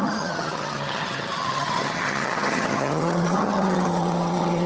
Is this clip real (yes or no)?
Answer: no